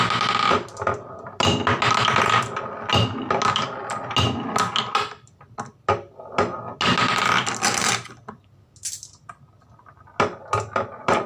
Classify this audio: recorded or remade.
recorded